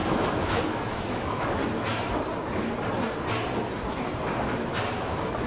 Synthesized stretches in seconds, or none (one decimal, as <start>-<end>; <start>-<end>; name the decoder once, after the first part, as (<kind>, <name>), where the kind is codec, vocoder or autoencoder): 0.0-1.6 (autoencoder, DAC-VAE); 4.9-5.5